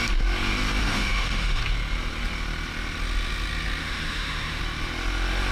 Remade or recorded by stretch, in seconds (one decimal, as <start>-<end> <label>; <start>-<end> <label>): 0.0-0.8 recorded; 0.8-1.6 remade; 1.6-3.8 recorded; 3.8-4.6 remade; 4.6-5.5 recorded